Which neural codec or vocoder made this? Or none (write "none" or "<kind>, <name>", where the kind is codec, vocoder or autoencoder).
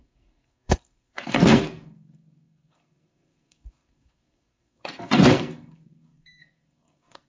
codec, SNAC